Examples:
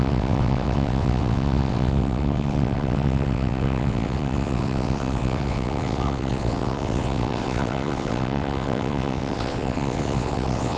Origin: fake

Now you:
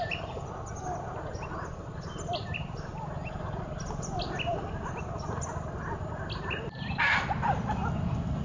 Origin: real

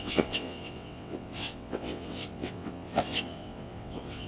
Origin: fake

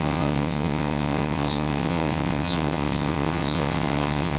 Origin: fake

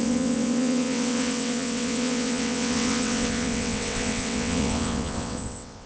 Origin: fake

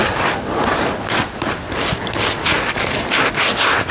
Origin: real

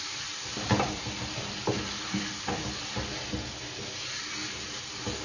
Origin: real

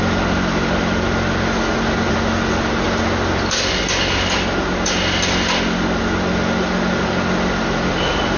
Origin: real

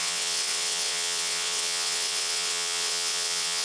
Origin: fake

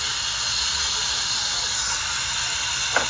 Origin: real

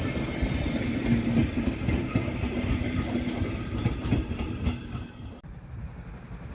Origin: real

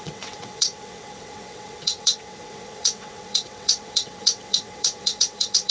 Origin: fake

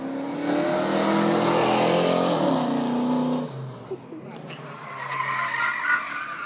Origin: real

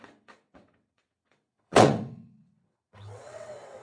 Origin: fake